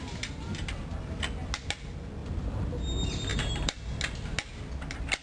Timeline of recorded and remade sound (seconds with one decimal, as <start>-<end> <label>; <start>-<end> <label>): 0.0-3.3 recorded; 3.3-4.0 remade; 4.0-5.2 recorded